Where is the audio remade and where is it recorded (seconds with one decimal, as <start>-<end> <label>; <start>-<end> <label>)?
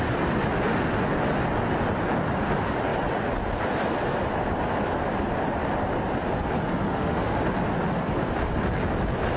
0.0-6.9 recorded; 6.9-7.5 remade; 7.5-9.4 recorded